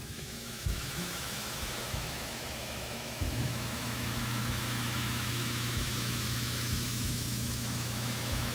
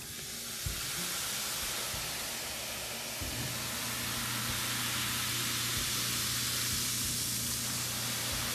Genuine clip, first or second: second